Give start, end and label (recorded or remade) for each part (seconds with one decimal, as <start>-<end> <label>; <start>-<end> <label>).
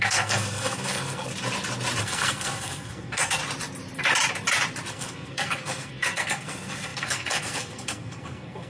0.0-1.3 remade; 1.3-2.0 recorded; 2.0-3.4 remade; 3.4-4.9 recorded; 4.9-8.7 remade